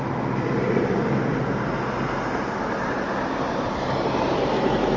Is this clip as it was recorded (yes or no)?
yes